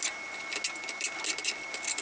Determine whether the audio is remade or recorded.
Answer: recorded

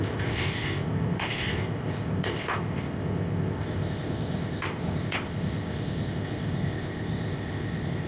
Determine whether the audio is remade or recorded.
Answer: remade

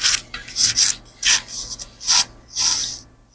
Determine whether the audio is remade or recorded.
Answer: recorded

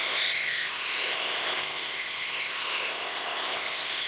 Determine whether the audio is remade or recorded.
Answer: remade